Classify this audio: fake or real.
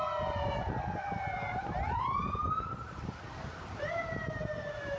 real